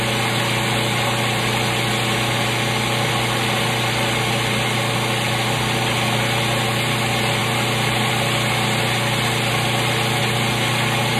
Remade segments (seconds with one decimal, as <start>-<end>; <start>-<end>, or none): none